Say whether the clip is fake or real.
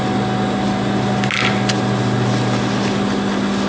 real